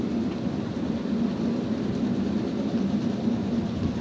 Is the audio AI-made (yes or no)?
no